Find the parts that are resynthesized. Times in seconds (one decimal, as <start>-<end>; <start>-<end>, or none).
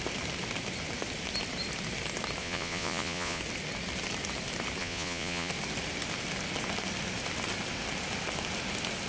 2.4-3.4; 4.8-5.5